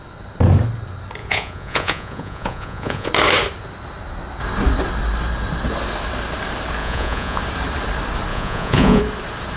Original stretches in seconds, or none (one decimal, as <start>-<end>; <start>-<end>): 0.0-1.2; 3.1-6.8; 7.4-8.3; 9.0-9.6